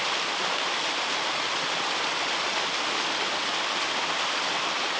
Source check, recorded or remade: recorded